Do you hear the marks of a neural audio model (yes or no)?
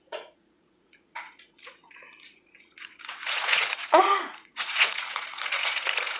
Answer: yes